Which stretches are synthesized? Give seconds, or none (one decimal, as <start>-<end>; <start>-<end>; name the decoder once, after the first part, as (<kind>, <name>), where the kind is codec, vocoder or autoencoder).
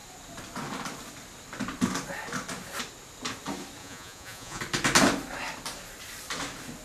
3.8-4.6 (vocoder, Vocos)